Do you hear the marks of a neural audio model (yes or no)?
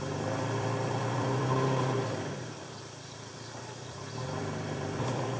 yes